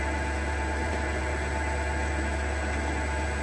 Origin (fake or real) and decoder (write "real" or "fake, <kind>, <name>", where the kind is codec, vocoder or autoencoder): real